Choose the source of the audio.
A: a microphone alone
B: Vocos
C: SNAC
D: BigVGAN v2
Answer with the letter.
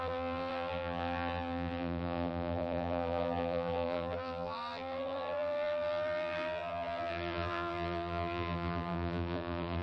D